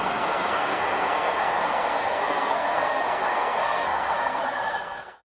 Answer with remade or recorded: remade